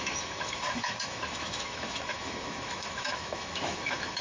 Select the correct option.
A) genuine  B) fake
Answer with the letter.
B